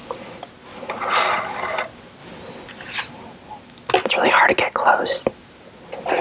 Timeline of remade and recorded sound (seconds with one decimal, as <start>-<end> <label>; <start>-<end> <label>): 0.0-6.2 recorded